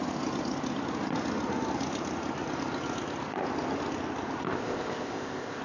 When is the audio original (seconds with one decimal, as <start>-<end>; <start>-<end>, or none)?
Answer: 0.0-4.5